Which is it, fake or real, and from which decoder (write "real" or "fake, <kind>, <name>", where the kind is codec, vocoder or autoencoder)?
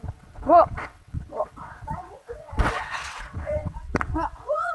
fake, vocoder, WaveNeXt